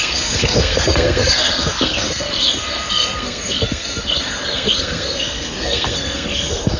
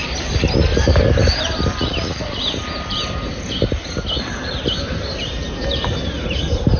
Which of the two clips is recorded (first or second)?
second